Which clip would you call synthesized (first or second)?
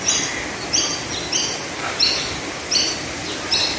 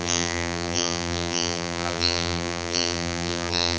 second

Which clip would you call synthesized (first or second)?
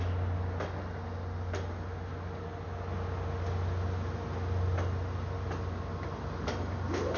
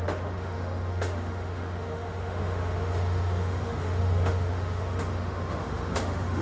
second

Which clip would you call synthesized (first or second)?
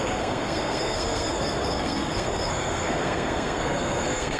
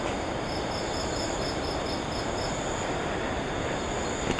first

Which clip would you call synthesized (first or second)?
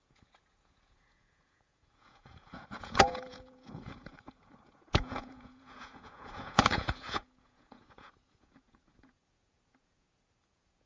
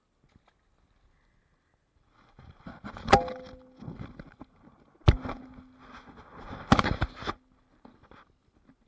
first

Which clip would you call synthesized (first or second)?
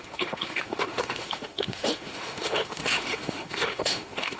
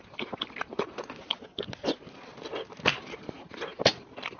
first